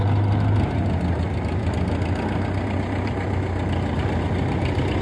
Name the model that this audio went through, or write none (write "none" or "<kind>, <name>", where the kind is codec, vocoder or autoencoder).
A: none